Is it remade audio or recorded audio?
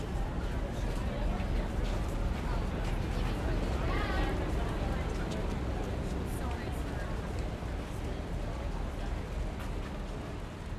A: recorded